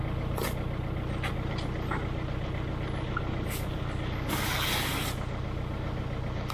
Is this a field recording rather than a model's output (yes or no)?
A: yes